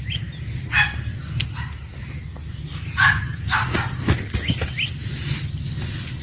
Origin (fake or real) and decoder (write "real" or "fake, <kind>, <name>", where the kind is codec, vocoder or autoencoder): real